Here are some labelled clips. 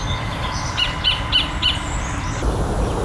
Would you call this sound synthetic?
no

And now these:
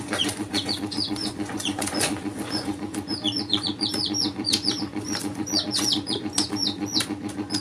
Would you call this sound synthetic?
yes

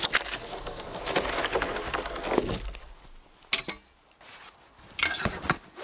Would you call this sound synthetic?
no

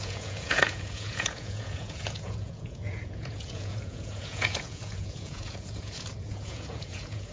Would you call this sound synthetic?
yes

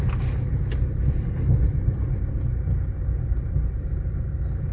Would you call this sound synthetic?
no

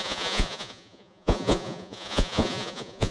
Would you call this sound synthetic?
yes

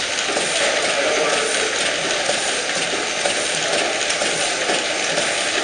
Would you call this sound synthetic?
no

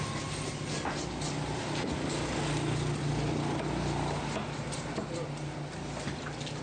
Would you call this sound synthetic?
no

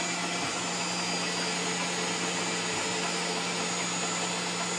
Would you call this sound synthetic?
no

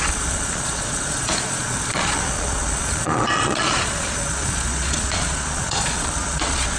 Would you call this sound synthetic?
yes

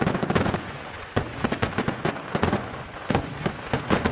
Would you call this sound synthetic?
yes